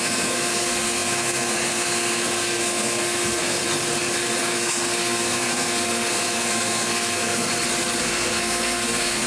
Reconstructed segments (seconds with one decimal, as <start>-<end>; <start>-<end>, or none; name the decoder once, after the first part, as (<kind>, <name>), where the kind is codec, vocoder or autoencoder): 0.0-3.6 (codec, SNAC); 4.4-7.5; 8.0-9.3